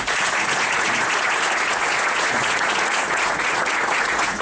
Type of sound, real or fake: fake